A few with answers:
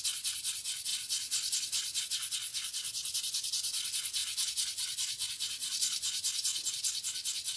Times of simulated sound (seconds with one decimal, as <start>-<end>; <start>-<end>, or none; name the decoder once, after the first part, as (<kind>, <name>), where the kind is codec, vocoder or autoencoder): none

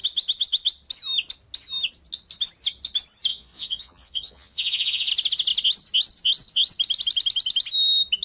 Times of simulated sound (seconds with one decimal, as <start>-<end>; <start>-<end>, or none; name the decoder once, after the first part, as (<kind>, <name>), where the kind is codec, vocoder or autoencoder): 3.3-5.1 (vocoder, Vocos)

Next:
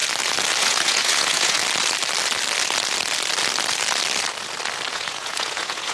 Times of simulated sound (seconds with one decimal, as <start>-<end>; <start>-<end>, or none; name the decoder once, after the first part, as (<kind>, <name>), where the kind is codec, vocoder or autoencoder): 0.6-1.6 (vocoder, Vocos); 4.9-5.9

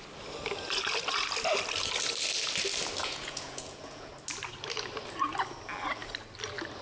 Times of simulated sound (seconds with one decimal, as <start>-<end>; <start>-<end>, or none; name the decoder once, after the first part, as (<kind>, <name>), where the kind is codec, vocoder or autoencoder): 3.0-4.1 (vocoder, Vocos)

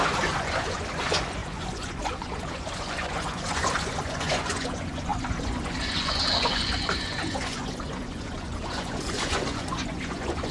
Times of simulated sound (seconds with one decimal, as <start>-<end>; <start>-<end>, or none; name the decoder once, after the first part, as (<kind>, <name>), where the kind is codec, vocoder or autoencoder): 0.0-10.5 (vocoder, Vocos)